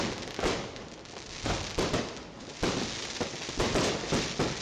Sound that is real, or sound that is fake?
real